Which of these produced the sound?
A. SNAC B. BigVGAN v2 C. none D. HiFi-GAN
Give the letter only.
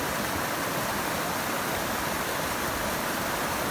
C